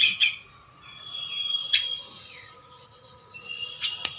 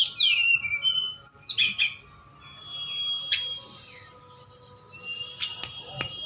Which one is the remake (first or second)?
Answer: first